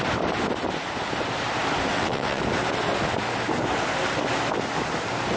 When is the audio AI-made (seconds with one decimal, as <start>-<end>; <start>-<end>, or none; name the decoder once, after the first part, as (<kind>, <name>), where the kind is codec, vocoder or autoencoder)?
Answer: 1.9-2.4 (vocoder, WaveNeXt)